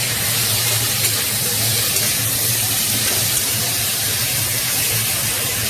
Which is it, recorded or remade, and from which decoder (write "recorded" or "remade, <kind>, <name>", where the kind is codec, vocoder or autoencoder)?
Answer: remade, vocoder, BigVGAN v2